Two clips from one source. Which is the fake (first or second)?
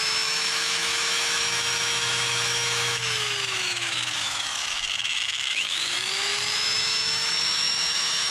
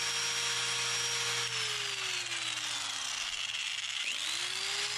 first